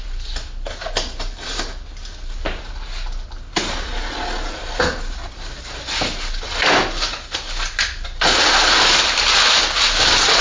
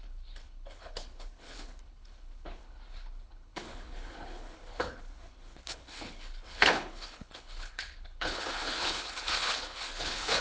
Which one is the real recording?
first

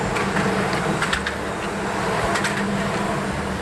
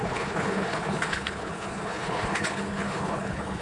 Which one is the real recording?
first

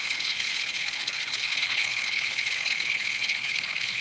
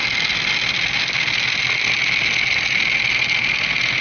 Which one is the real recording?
second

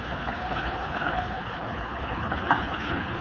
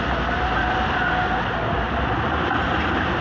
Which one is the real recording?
second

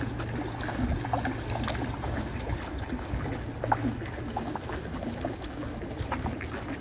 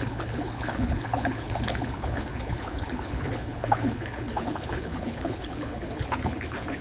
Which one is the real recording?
first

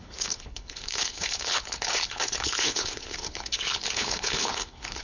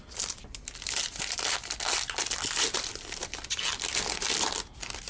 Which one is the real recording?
second